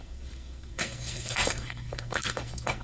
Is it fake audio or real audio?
fake